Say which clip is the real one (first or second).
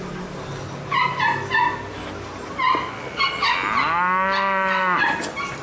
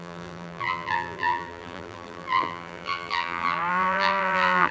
first